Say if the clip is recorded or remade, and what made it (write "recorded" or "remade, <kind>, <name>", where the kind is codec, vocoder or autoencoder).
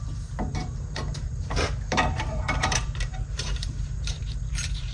remade, vocoder, BigVGAN v2